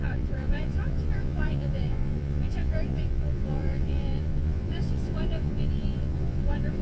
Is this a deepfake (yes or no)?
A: yes